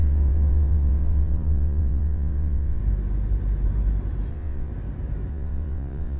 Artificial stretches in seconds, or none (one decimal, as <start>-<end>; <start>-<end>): 0.0-2.8; 4.3-4.7; 5.3-6.2